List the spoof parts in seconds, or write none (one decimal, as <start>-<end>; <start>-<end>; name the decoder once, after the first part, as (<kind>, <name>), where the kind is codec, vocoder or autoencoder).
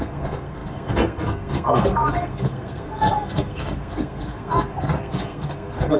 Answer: 0.0-6.0 (codec, SNAC)